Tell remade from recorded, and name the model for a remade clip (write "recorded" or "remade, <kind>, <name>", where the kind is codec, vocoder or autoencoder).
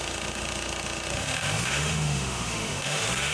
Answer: remade, autoencoder, DAC-VAE